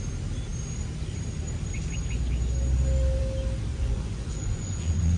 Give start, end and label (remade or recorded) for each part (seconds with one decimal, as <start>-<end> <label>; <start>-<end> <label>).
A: 0.0-3.7 recorded; 3.7-5.2 remade